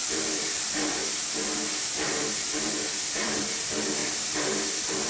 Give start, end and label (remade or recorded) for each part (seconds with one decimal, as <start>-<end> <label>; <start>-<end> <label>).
0.0-1.0 remade; 1.0-2.4 recorded; 2.4-5.1 remade